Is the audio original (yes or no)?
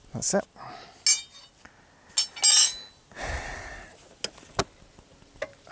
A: yes